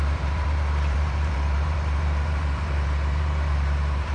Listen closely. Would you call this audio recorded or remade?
remade